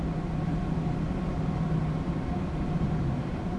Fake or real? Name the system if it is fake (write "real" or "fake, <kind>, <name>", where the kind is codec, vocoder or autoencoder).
real